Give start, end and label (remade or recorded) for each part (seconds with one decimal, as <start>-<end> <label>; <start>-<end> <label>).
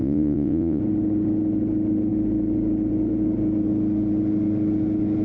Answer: 0.0-0.8 remade; 0.8-5.2 recorded